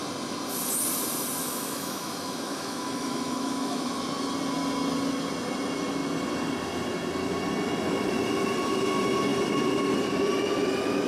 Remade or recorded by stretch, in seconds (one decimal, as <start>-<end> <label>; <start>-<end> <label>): 0.0-1.4 recorded; 1.4-4.0 remade; 4.0-11.1 recorded